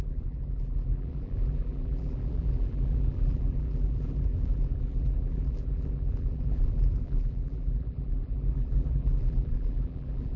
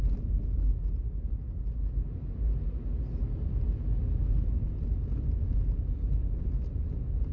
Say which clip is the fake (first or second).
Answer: first